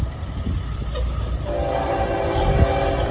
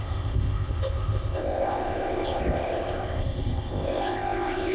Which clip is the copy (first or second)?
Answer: second